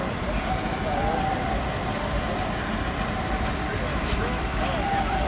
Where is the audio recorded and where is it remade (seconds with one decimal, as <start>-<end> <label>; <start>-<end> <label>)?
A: 0.0-3.9 recorded; 3.9-4.6 remade; 4.6-5.3 recorded